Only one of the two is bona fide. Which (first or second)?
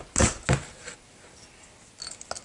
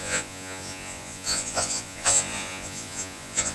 first